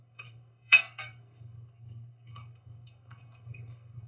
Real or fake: fake